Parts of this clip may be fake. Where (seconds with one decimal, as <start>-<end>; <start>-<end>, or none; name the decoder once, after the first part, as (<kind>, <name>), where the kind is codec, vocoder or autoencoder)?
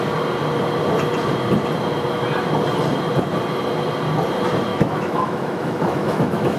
4.7-6.6 (autoencoder, DAC-VAE)